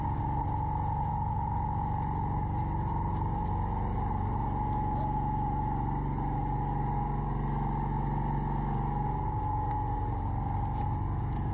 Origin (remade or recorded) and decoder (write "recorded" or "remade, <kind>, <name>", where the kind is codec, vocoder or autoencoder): recorded